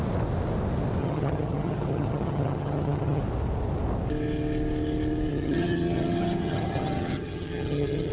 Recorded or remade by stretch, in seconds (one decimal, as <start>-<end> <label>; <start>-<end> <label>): 0.0-1.0 recorded; 1.0-3.2 remade; 3.2-5.3 recorded; 5.3-8.1 remade